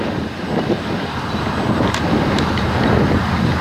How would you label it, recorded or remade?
recorded